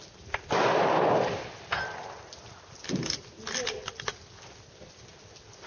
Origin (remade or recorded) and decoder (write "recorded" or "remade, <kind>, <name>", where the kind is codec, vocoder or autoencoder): recorded